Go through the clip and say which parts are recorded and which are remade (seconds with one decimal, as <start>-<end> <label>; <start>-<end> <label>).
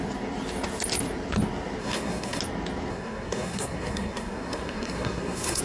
0.0-1.8 recorded; 1.8-2.4 remade; 2.4-2.9 recorded; 2.9-5.6 remade